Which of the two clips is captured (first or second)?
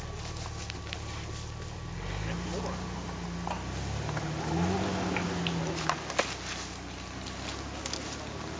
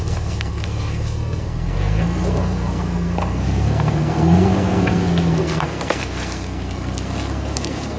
first